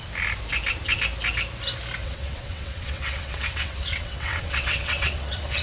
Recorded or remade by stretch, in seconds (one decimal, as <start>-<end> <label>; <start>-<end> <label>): 0.0-2.0 recorded; 2.0-5.6 remade